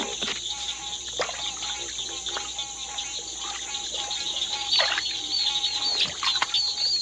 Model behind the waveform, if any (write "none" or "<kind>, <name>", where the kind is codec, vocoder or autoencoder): none